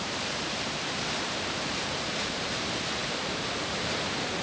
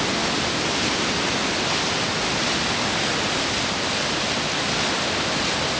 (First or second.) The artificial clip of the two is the first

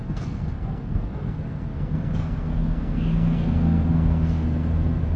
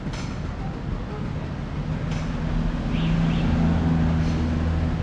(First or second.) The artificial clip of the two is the first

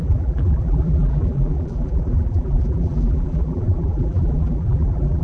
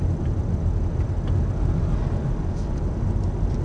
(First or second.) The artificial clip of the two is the first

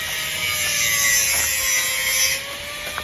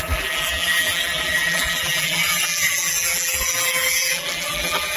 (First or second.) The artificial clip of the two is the second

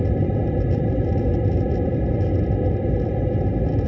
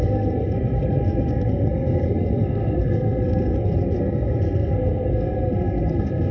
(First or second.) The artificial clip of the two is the second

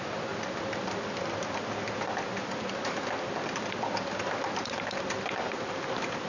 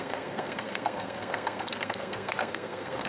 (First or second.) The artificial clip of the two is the second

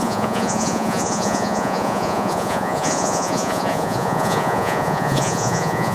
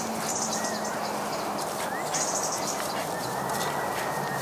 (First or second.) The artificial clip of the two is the first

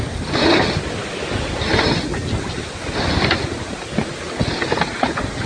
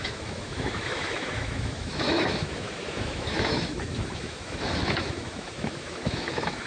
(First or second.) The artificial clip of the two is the second